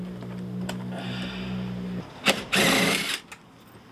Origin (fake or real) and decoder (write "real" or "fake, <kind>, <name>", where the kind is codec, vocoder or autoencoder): real